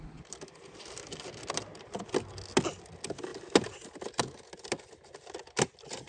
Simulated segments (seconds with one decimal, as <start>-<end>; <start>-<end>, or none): none